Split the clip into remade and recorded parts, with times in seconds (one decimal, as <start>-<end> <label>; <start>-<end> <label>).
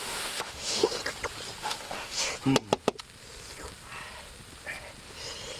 0.0-1.0 remade; 1.0-1.6 recorded; 1.6-2.3 remade; 2.3-5.6 recorded